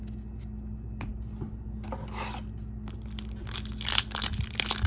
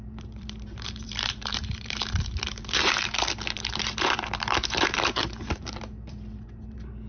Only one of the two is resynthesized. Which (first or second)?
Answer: second